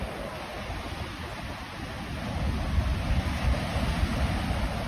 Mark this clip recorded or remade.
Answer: recorded